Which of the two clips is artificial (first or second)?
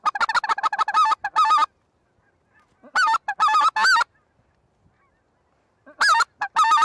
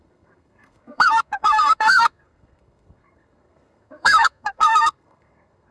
second